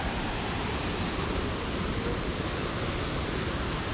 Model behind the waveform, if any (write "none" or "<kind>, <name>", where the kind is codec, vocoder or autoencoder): none